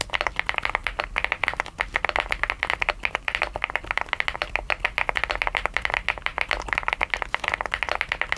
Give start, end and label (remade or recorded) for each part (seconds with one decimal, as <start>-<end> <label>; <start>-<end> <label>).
0.0-8.4 recorded